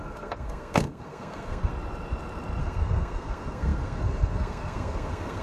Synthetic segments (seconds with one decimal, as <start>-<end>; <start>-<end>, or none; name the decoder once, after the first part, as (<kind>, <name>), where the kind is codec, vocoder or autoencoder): 0.0-1.7 (codec, SNAC); 2.6-5.4